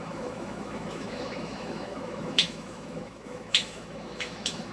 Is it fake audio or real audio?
fake